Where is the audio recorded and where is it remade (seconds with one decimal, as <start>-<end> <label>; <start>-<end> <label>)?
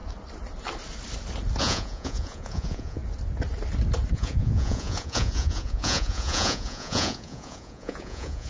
0.0-1.6 recorded; 1.6-3.0 remade; 3.0-4.1 recorded; 4.1-8.5 remade